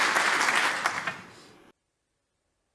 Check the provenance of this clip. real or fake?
real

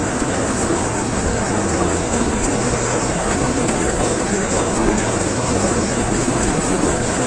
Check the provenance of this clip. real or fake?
fake